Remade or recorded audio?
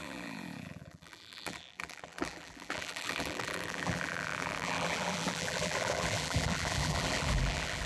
remade